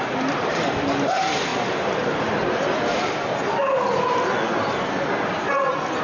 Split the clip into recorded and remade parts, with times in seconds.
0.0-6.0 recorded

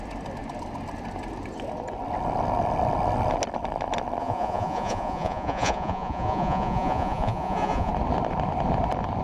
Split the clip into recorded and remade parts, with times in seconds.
0.0-4.2 recorded; 4.2-7.9 remade; 7.9-9.2 recorded